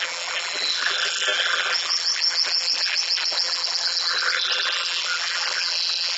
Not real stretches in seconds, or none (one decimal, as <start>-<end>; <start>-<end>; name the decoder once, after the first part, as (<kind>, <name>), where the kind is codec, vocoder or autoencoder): 0.0-6.2 (vocoder, BigVGAN v2)